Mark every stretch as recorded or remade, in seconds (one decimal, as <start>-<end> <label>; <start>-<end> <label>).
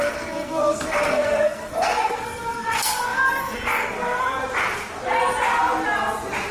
0.0-4.4 remade; 4.4-6.5 recorded